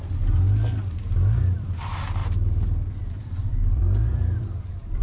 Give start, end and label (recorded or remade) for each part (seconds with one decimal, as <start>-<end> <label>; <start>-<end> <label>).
0.0-2.2 recorded; 2.2-5.0 remade